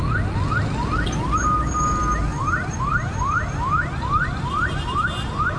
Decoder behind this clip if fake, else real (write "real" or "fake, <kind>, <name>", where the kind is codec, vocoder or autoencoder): real